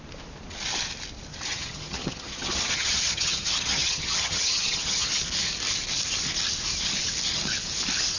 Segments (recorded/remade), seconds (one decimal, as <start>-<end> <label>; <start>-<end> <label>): 0.0-1.3 recorded; 1.3-5.2 remade; 5.2-8.2 recorded